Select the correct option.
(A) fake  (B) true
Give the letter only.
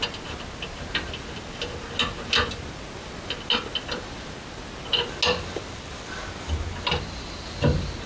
B